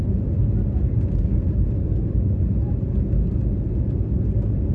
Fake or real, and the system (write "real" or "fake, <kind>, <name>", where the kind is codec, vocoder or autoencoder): real